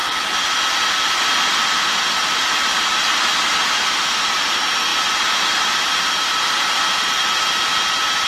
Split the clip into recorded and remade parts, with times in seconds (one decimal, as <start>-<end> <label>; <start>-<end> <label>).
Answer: 0.0-8.3 recorded